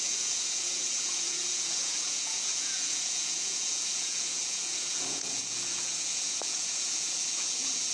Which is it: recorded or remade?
remade